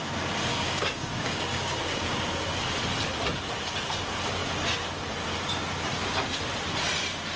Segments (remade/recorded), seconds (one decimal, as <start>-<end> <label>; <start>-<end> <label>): 0.0-0.5 recorded; 0.5-2.7 remade; 2.7-7.4 recorded